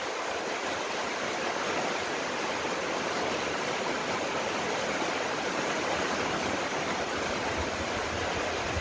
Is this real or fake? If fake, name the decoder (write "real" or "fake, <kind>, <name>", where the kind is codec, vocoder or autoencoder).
real